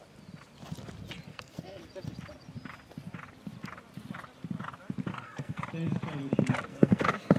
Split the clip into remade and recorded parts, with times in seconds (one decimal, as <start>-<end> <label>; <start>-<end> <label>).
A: 0.0-1.3 recorded; 1.3-1.8 remade; 1.8-5.1 recorded; 5.1-5.6 remade; 5.6-6.7 recorded; 6.7-7.4 remade